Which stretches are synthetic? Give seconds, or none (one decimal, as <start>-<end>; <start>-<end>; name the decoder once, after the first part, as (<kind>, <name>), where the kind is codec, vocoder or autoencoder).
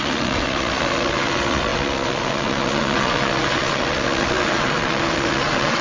0.0-5.8 (vocoder, WaveNeXt)